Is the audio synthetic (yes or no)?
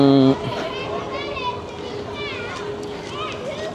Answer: no